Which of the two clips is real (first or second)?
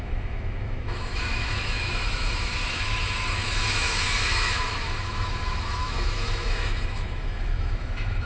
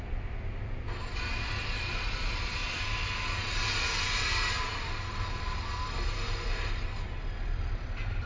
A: second